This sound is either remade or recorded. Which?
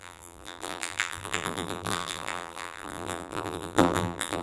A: remade